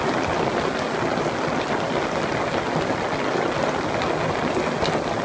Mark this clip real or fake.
real